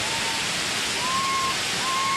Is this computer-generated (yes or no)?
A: no